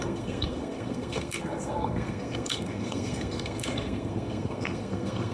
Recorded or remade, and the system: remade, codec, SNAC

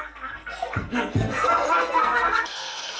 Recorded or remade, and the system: remade, codec, SNAC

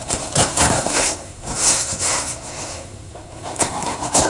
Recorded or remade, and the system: remade, codec, SNAC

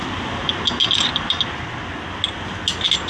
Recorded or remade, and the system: recorded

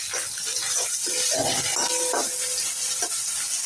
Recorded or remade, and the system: recorded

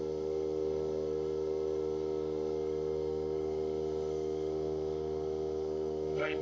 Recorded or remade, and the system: remade, codec, SNAC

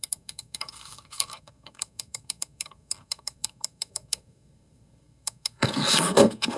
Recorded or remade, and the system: remade, codec, SNAC